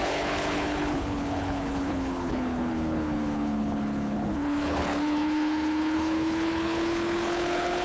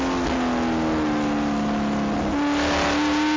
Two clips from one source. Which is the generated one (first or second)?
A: first